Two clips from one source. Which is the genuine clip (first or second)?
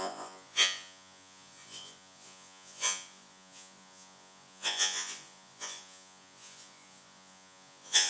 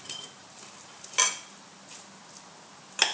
second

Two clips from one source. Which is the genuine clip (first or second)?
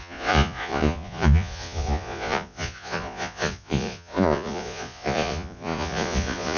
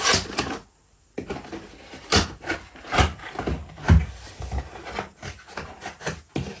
second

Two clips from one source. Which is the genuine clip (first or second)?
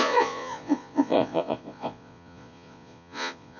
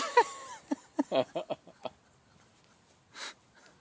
second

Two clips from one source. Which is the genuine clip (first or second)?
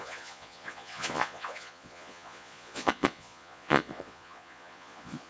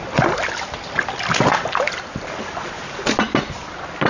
second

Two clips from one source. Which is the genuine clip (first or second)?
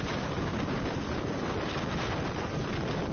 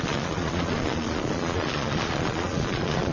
first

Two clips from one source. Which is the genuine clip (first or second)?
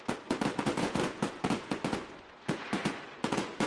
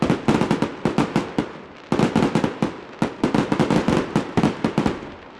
second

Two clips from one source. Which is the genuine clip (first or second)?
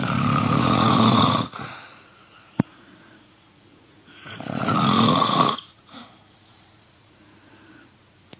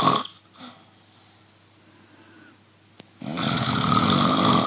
second